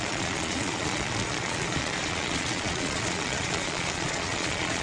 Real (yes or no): no